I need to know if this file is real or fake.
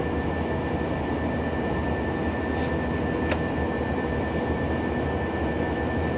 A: real